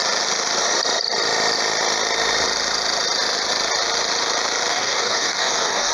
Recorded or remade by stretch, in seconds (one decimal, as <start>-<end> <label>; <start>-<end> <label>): 0.0-4.7 recorded; 4.7-5.9 remade